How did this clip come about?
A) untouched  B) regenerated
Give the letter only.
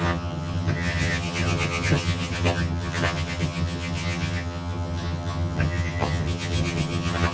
B